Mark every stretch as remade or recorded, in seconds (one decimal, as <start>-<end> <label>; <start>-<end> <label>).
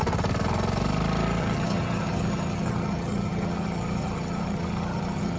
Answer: 0.0-1.4 recorded; 1.4-5.4 remade